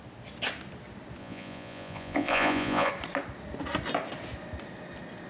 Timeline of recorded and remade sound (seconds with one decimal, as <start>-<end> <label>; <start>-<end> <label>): 0.0-1.2 recorded; 1.2-2.9 remade; 2.9-5.3 recorded